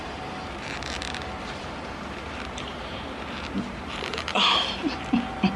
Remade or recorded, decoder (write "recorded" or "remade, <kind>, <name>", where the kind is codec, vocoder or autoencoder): remade, vocoder, BigVGAN v2